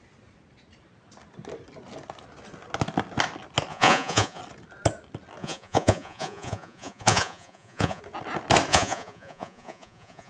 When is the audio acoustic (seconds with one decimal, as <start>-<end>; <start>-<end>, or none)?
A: 0.0-3.7; 4.4-5.4; 8.0-8.7